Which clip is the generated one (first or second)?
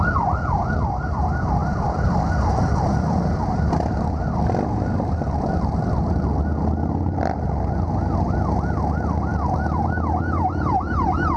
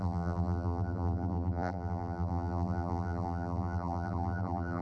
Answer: second